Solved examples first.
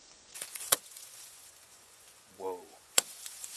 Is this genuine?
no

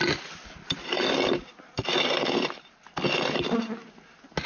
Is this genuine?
yes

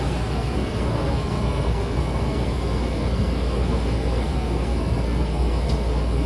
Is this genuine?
no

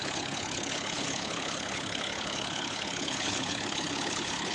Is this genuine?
no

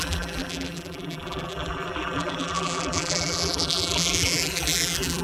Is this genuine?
no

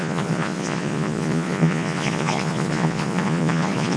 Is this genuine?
no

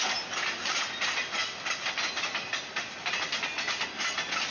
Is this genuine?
yes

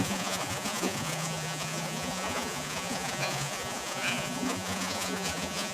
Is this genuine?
no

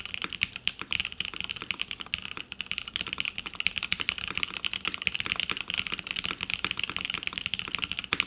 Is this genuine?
yes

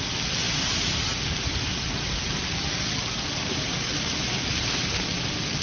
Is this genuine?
yes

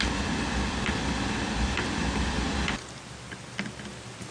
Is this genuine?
yes